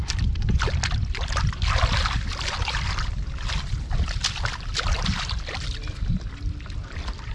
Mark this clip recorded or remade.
recorded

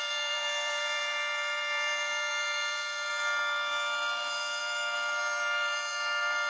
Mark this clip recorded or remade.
remade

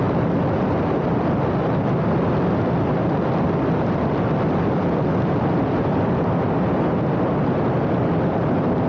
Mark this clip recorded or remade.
recorded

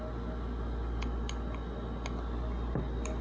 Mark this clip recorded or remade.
recorded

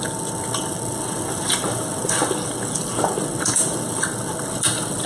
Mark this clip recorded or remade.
recorded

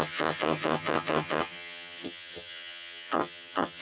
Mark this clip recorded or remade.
remade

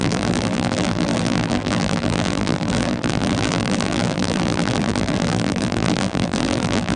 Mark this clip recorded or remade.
remade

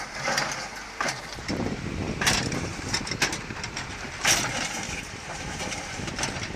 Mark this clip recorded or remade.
remade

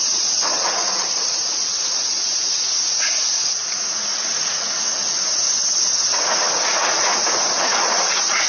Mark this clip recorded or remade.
remade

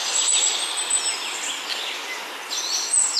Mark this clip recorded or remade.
recorded